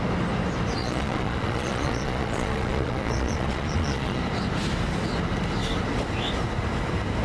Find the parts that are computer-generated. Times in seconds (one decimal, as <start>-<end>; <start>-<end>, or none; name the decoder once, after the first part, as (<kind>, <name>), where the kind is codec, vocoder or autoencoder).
0.8-4.2 (vocoder, Vocos)